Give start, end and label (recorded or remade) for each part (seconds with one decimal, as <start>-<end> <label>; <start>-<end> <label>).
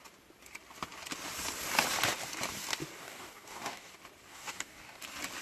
0.0-3.0 recorded; 3.0-3.9 remade; 3.9-4.3 recorded; 4.3-5.0 remade; 5.0-5.4 recorded